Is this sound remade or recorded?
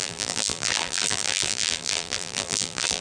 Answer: remade